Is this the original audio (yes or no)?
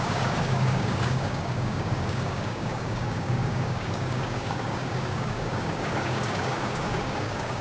no